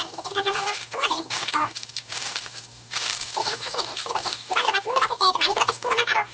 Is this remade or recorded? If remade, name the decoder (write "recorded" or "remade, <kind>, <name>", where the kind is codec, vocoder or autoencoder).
remade, codec, DAC